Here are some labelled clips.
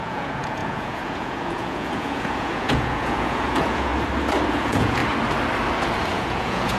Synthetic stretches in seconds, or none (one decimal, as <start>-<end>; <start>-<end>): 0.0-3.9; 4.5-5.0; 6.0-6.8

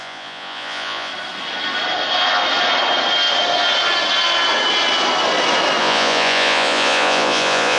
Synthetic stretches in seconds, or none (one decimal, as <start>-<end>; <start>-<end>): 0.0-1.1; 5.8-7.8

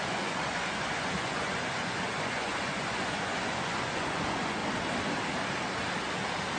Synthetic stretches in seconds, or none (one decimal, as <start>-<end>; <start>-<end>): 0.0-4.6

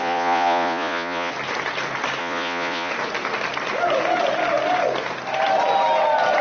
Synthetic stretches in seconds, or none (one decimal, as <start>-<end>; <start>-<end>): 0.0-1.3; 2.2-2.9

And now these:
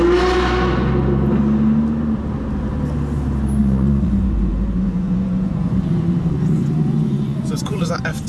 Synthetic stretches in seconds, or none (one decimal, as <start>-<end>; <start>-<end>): 3.6-7.9

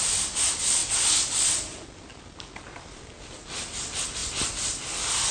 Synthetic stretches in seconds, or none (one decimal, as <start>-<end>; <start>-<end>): none

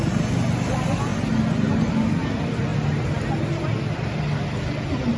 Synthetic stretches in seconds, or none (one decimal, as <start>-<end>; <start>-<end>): none